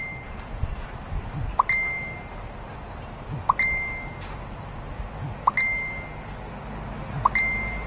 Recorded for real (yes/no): yes